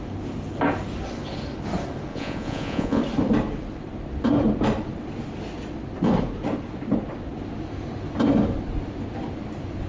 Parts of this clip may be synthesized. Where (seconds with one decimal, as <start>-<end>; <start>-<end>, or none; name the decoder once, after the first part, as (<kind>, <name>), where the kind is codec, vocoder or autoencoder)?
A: 2.1-3.0 (vocoder, Vocos)